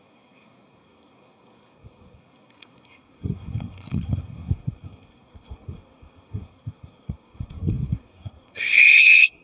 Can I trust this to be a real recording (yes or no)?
no